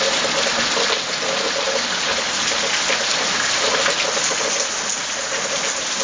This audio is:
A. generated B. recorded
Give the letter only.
B